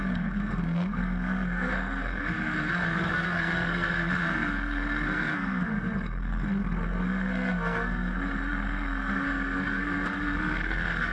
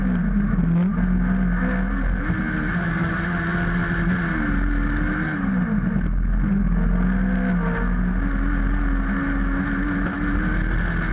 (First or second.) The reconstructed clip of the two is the first